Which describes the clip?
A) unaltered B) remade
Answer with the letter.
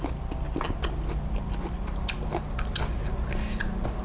A